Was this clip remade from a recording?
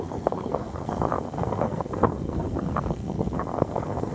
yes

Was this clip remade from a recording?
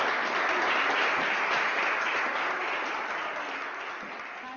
no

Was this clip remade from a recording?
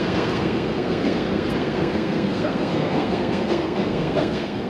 yes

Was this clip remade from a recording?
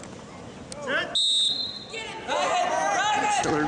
no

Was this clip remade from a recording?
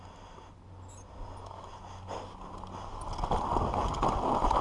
no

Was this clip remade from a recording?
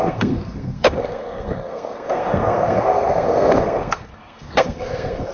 yes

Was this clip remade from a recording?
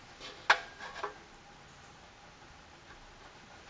no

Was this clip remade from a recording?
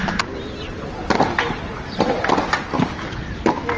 no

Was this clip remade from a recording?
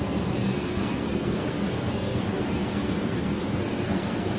yes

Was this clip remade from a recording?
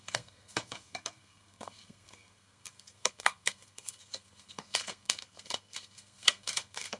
yes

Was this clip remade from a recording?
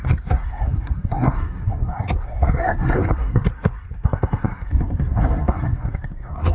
yes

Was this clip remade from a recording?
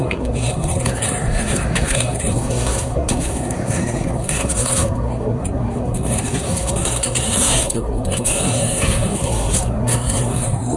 yes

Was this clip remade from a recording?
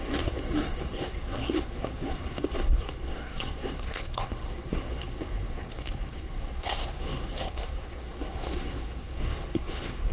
yes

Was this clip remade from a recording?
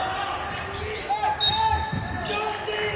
no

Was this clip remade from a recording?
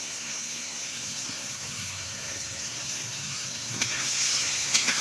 yes